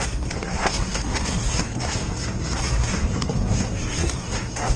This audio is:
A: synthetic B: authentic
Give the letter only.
A